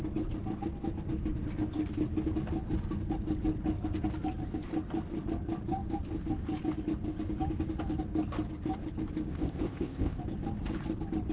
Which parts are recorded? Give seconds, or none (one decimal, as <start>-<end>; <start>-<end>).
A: 0.0-9.3; 10.2-11.3